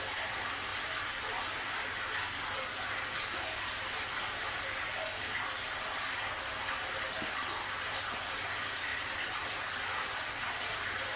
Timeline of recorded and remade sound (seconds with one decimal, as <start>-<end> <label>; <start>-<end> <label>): 0.0-11.2 recorded